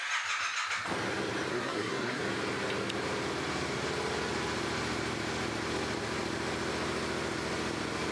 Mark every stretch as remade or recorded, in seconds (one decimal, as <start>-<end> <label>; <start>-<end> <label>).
0.0-1.5 recorded; 1.5-2.2 remade; 2.2-8.1 recorded